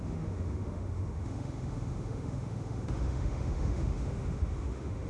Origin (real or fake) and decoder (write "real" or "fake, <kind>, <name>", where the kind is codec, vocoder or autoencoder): fake, autoencoder, DAC-VAE